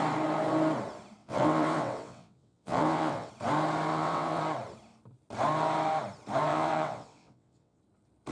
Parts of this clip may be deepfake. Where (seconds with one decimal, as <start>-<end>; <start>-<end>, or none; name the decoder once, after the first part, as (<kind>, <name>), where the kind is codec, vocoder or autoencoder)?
1.2-3.3 (vocoder, WaveNeXt); 3.9-4.4; 6.5-7.8